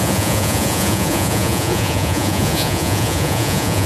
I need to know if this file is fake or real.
fake